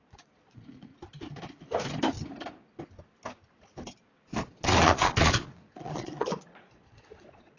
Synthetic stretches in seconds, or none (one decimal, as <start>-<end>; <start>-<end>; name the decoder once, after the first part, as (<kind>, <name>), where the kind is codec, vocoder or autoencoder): 0.0-0.9 (vocoder, Vocos); 4.6-7.6